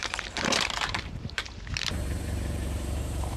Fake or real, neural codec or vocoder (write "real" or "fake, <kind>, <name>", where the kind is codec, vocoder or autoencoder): fake, vocoder, BigVGAN v2